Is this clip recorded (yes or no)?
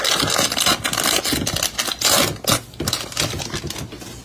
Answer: yes